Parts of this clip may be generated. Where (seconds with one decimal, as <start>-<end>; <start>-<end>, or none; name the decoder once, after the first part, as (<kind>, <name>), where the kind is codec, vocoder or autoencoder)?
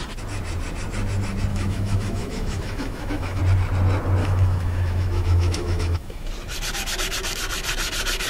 1.5-3.4 (autoencoder, DAC-VAE); 4.2-6.3